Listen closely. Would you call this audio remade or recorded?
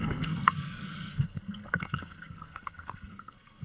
remade